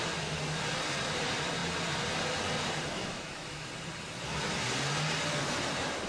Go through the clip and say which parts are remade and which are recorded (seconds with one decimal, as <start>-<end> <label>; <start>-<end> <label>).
0.0-2.9 recorded; 2.9-3.7 remade; 3.7-6.1 recorded

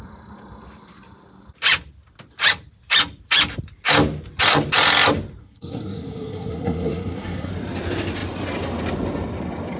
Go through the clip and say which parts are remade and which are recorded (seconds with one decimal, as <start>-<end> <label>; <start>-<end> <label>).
0.0-5.4 recorded; 5.4-7.5 remade; 7.5-9.8 recorded